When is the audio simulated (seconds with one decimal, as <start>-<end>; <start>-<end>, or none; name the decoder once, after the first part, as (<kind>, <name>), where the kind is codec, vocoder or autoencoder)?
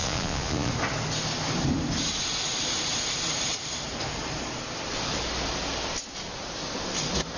0.0-0.7 (vocoder, Vocos)